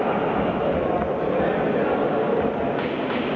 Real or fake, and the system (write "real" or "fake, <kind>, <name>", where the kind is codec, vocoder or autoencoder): real